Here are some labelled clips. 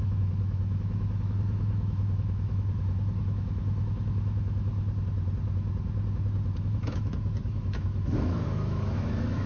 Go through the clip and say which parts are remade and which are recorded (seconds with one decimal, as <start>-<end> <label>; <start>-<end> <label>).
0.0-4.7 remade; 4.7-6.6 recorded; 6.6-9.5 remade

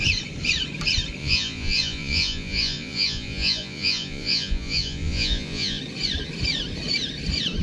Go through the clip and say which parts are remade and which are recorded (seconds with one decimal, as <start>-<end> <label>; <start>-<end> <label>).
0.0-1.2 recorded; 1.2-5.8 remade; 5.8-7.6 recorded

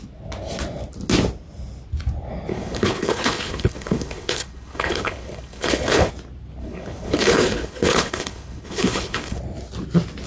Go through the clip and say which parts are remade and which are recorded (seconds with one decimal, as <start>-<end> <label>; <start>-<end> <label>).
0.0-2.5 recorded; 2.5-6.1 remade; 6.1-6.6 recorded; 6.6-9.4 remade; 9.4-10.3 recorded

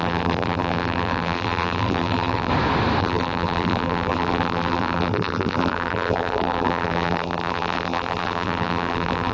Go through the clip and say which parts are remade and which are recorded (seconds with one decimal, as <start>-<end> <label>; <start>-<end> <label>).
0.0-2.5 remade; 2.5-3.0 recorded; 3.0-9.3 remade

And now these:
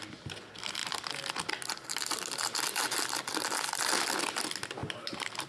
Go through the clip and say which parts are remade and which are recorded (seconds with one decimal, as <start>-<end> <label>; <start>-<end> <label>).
0.0-4.8 recorded; 4.8-5.5 remade